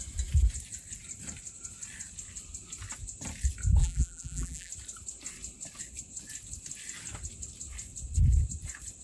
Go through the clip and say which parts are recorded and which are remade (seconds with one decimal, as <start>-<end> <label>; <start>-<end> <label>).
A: 0.0-3.8 recorded; 3.8-4.7 remade; 4.7-9.0 recorded

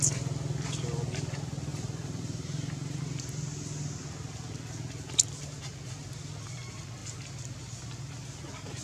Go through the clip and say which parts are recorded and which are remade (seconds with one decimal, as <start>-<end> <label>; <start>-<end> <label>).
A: 0.0-1.7 recorded; 1.7-3.0 remade; 3.0-8.8 recorded

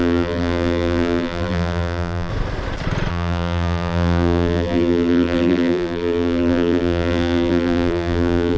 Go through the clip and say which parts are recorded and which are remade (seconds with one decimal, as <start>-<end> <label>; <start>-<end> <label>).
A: 0.0-2.3 remade; 2.3-3.1 recorded; 3.1-8.6 remade

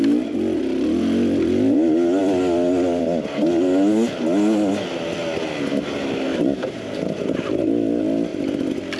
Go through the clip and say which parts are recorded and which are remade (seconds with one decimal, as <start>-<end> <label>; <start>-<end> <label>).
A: 0.0-6.3 recorded; 6.3-7.6 remade; 7.6-9.0 recorded

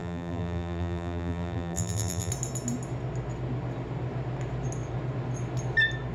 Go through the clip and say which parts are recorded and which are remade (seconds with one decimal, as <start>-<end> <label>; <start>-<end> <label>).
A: 0.0-2.3 remade; 2.3-6.1 recorded